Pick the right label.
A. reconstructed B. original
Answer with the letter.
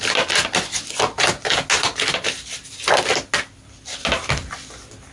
B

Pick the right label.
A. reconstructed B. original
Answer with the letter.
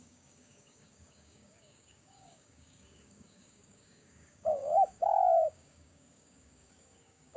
A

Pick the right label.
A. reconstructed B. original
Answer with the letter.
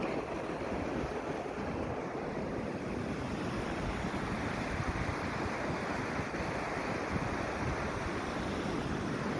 B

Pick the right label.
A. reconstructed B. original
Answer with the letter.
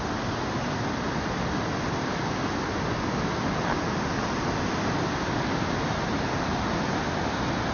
B